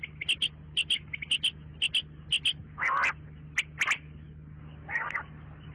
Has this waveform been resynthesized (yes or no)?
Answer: no